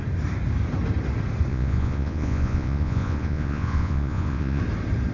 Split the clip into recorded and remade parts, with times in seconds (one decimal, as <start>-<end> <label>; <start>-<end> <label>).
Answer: 0.0-1.5 recorded; 1.5-4.6 remade; 4.6-5.1 recorded